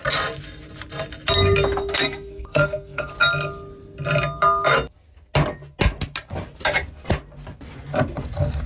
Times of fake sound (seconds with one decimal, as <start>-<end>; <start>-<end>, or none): 1.9-3.1